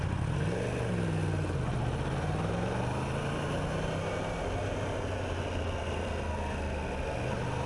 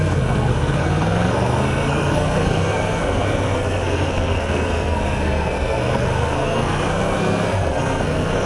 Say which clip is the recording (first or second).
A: first